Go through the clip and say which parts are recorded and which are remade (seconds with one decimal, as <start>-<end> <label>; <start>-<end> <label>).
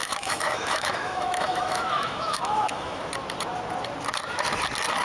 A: 0.0-3.0 remade; 3.0-5.0 recorded